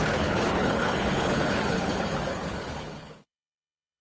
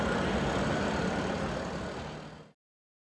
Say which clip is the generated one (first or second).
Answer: first